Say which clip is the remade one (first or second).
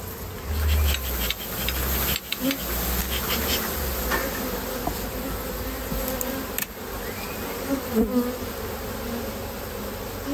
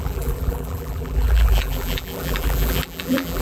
second